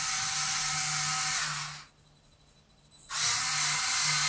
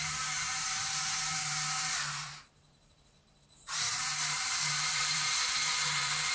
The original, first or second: first